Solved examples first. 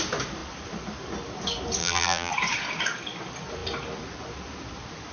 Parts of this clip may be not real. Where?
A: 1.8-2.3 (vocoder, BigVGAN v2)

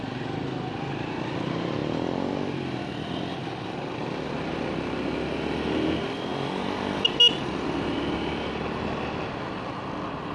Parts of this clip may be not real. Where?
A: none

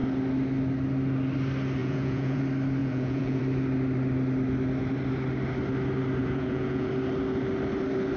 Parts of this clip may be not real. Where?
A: 1.8-2.4 (vocoder, Vocos); 2.8-3.4; 6.2-6.9

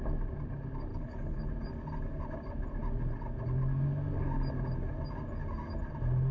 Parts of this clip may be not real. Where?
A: 0.9-1.4 (codec, HILCodec)